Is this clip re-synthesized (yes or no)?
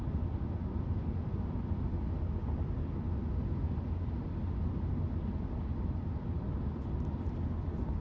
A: no